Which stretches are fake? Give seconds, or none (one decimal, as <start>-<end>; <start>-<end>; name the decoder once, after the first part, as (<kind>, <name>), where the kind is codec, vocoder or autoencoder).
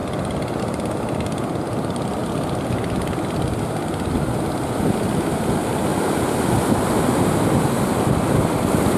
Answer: 0.6-2.2 (vocoder, BigVGAN v2); 4.9-5.9; 8.6-9.0